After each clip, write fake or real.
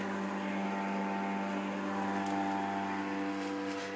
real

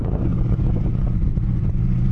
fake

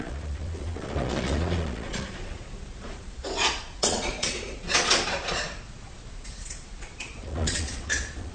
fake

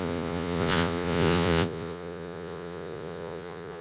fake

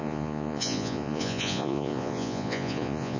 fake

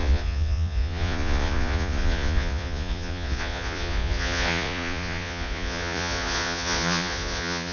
fake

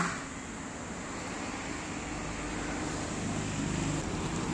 real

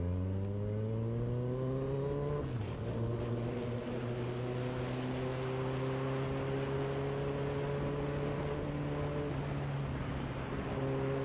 real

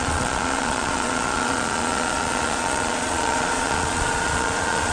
fake